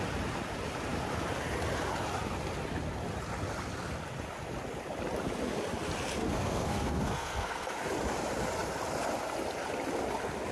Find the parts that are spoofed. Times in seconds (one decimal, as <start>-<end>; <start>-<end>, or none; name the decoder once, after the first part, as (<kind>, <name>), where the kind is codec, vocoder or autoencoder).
6.2-7.7 (codec, SNAC)